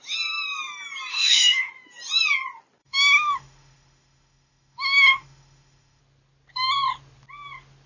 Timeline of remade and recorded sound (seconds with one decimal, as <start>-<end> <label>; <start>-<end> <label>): 0.0-1.1 recorded; 1.1-1.7 remade; 1.7-2.8 recorded; 2.8-6.0 remade; 6.0-7.9 recorded